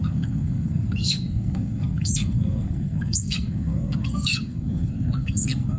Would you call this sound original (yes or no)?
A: no